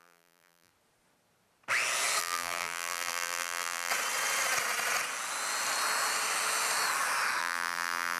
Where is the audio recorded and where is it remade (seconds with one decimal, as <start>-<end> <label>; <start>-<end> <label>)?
0.0-0.7 remade; 0.7-2.2 recorded; 2.2-3.9 remade; 3.9-7.4 recorded; 7.4-8.2 remade